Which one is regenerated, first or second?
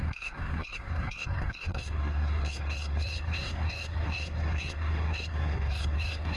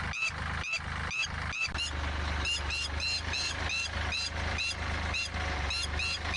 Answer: first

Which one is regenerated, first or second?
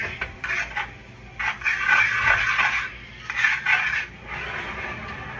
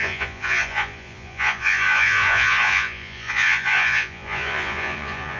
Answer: second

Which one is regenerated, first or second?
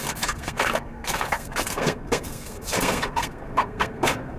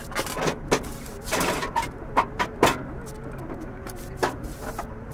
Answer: first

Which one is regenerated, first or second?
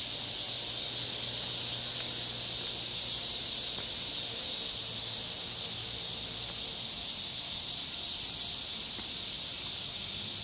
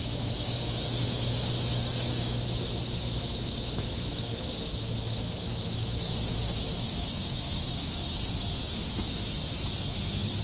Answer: second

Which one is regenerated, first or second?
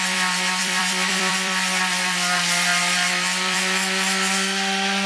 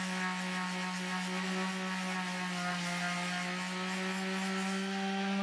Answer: first